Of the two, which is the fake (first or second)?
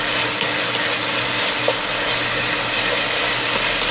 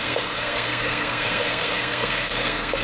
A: second